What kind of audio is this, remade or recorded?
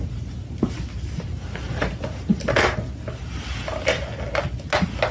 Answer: recorded